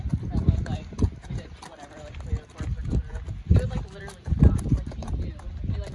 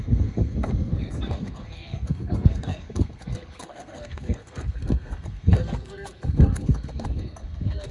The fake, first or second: second